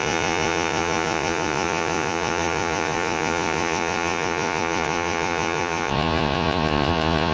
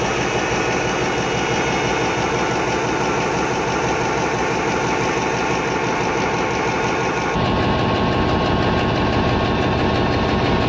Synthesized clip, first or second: first